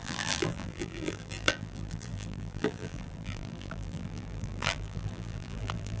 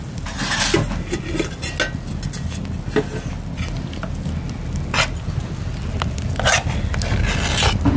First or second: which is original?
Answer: second